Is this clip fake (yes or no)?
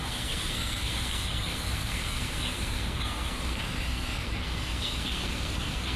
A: yes